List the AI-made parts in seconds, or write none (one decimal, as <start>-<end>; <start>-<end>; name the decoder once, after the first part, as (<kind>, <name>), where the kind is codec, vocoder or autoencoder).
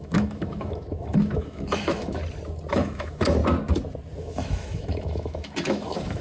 0.0-2.2 (autoencoder, DAC-VAE); 2.7-3.4; 4.2-6.2